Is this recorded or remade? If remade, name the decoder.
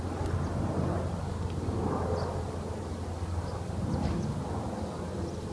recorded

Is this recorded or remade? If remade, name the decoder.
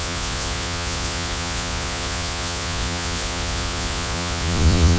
remade, vocoder, Vocos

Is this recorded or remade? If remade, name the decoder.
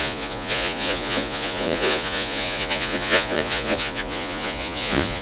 remade, vocoder, Vocos